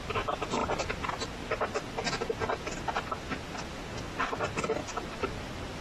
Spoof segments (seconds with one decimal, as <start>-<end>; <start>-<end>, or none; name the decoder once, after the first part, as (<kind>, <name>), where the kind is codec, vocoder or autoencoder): none